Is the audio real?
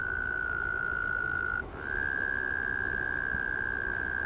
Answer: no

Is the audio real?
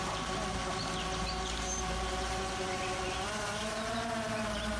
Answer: yes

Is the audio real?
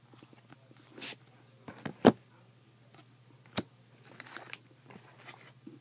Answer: yes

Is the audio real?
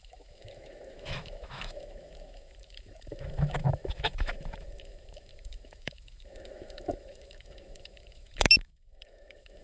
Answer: no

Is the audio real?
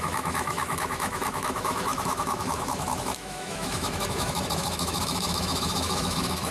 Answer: no